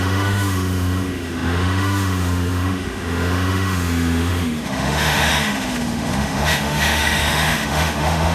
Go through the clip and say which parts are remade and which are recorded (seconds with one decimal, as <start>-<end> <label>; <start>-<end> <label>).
0.0-8.3 remade